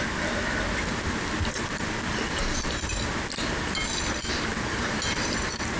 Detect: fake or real real